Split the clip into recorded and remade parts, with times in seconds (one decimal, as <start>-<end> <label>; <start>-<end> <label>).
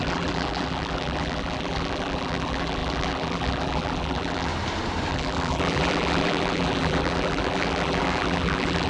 0.0-4.5 remade; 4.5-5.1 recorded; 5.1-8.9 remade